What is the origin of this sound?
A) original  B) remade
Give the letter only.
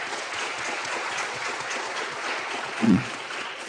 B